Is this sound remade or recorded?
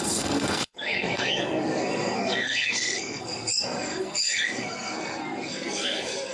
remade